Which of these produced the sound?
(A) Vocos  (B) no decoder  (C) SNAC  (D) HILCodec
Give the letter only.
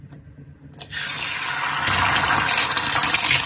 B